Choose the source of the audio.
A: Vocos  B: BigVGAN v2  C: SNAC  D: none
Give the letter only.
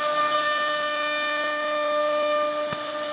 D